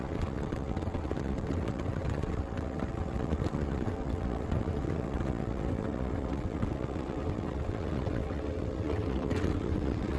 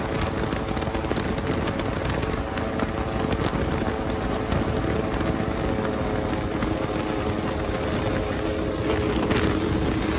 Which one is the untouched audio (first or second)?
second